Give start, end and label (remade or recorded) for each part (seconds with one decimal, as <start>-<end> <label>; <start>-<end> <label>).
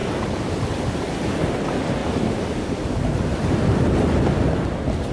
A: 0.0-1.2 recorded; 1.2-5.1 remade